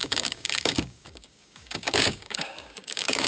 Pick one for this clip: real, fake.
fake